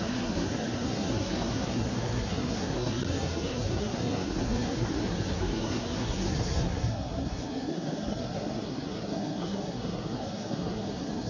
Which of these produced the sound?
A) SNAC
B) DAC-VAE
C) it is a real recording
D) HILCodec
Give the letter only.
A